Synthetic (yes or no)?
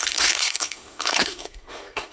yes